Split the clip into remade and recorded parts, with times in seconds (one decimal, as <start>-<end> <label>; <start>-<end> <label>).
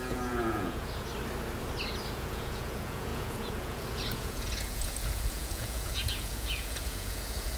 0.0-1.1 remade; 1.1-2.1 recorded; 2.1-7.6 remade